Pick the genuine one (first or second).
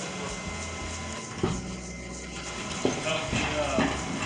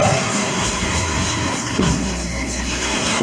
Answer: first